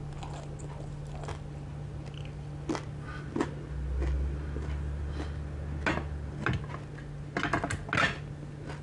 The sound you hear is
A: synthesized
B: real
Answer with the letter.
B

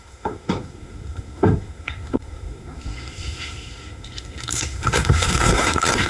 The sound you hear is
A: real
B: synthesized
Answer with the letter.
B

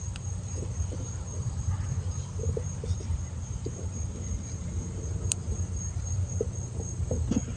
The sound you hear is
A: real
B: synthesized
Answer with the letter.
A